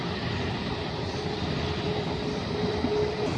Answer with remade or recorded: remade